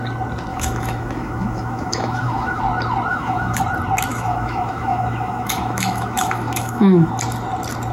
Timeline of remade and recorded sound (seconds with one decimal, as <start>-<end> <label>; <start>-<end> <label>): 0.0-0.5 recorded; 0.5-2.6 remade; 2.6-3.1 recorded; 3.1-3.6 remade; 3.6-4.1 recorded; 4.1-7.1 remade; 7.1-7.9 recorded